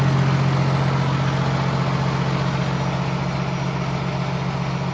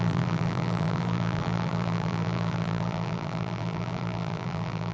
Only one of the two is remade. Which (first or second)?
second